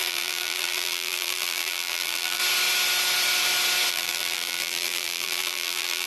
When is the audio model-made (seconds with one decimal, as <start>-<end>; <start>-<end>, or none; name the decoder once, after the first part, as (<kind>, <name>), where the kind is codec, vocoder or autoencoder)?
0.0-2.4 (vocoder, BigVGAN v2); 3.9-6.1